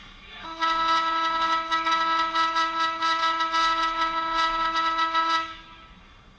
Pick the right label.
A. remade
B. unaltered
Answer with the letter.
A